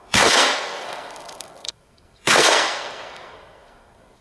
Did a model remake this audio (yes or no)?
yes